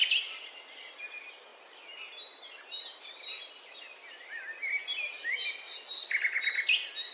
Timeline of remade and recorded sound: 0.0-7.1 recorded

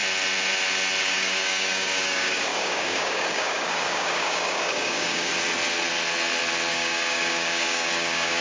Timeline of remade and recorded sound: 0.0-1.0 recorded; 1.0-5.3 remade; 5.3-6.7 recorded; 6.7-8.4 remade

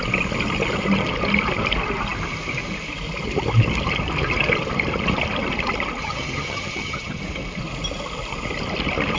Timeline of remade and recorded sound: 0.0-6.0 recorded; 6.0-7.2 remade; 7.2-9.2 recorded